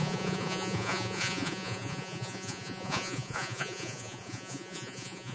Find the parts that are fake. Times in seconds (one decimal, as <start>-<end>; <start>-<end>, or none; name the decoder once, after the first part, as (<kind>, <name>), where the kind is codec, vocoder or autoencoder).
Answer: 0.0-5.3 (vocoder, Vocos)